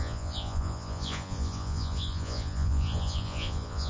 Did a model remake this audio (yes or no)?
yes